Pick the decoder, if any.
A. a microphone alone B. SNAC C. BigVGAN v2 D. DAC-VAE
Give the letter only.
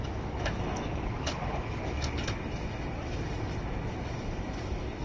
D